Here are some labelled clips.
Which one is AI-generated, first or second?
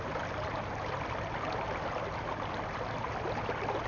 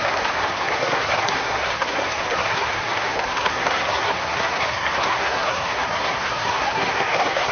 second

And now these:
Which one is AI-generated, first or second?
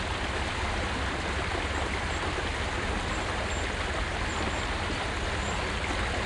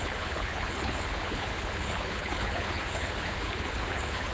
second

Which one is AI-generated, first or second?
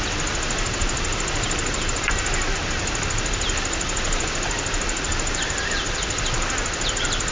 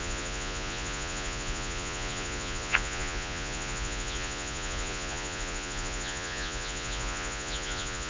second